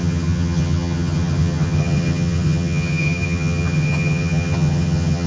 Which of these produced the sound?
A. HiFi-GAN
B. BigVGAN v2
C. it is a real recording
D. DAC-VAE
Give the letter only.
A